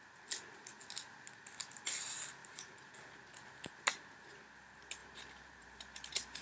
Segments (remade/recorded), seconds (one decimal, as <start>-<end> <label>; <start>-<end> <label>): 0.0-2.4 recorded; 2.4-2.9 remade; 2.9-5.0 recorded; 5.0-6.4 remade